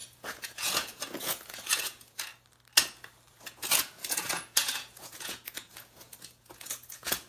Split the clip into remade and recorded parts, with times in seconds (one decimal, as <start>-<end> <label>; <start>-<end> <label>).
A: 0.0-2.3 remade; 2.3-3.3 recorded; 3.3-7.3 remade